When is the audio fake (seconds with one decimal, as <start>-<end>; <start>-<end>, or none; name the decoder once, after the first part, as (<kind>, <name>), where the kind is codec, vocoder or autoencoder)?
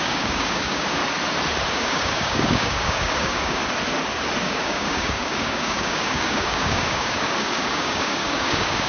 0.0-1.0 (codec, DAC); 1.7-3.6; 4.4-8.9